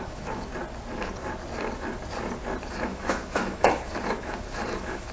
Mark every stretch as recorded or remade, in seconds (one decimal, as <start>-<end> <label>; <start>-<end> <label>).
0.0-0.5 remade; 0.5-2.7 recorded; 2.7-5.1 remade